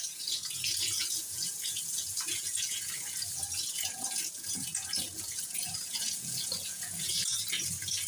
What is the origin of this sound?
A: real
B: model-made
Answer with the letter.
B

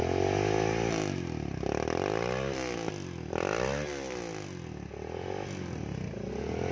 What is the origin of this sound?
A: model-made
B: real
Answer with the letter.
B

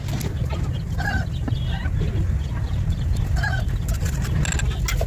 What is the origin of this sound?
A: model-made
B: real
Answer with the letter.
B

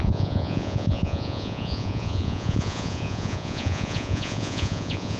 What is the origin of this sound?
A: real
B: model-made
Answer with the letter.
B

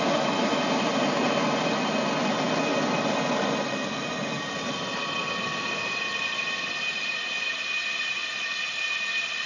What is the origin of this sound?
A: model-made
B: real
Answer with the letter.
B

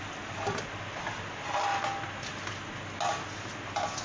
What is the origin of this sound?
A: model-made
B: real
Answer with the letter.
B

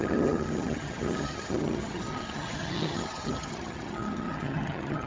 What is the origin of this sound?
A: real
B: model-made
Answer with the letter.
B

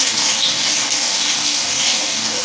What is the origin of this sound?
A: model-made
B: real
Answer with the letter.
A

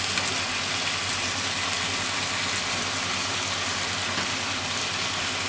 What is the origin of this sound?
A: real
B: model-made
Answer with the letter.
A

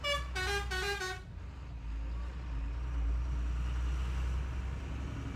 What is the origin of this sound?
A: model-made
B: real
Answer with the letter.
B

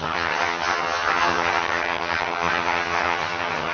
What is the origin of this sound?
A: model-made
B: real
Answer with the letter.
A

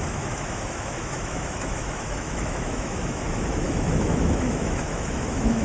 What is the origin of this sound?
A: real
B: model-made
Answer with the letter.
B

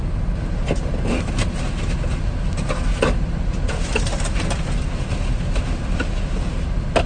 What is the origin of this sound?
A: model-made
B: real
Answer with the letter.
B